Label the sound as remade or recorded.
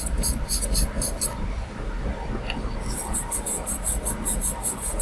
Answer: recorded